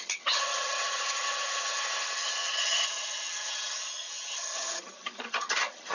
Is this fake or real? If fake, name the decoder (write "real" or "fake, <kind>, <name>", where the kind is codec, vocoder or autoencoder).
fake, vocoder, HiFi-GAN